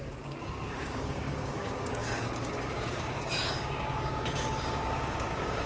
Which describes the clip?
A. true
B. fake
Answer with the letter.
B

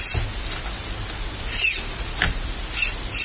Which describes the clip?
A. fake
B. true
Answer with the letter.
B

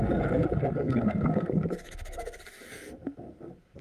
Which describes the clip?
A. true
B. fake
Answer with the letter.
B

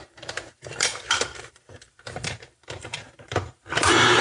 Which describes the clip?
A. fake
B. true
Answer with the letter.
A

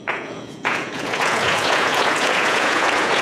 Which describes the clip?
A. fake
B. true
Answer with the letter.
A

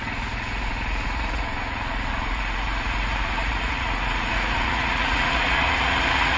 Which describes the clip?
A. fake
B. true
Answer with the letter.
A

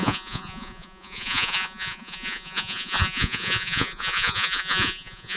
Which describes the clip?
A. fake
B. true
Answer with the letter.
A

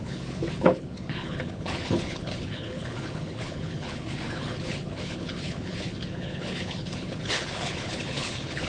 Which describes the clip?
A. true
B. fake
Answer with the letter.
B